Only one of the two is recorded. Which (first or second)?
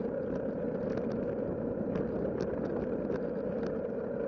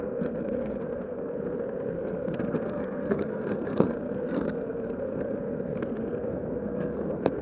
first